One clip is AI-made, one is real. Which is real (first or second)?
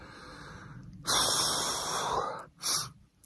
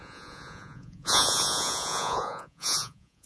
first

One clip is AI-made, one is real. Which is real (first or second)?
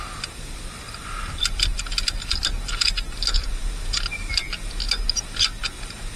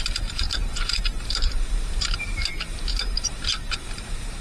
first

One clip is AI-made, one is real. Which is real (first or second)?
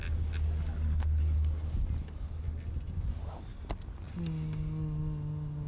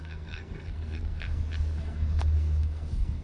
first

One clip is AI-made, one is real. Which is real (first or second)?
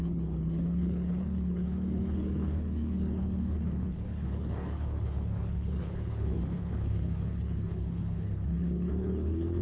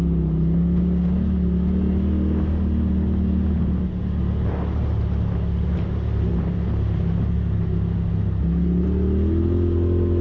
second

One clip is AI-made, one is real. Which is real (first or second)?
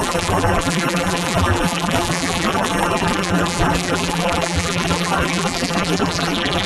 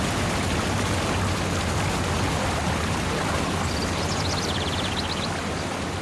second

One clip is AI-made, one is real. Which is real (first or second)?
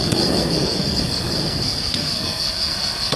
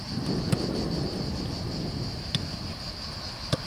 second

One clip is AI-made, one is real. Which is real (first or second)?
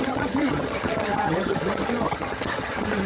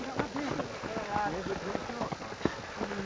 second